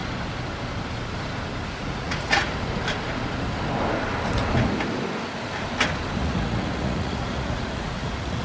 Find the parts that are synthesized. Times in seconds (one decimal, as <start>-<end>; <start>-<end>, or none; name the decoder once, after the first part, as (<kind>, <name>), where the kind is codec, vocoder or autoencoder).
1.7-2.5 (vocoder, Vocos); 6.2-8.4